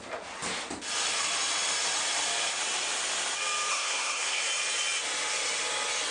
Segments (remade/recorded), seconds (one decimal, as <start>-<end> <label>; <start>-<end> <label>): 0.0-3.7 recorded; 3.7-4.5 remade; 4.5-6.1 recorded